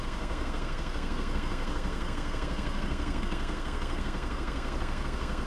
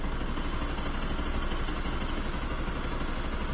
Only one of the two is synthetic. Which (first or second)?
first